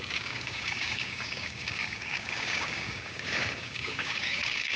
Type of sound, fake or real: fake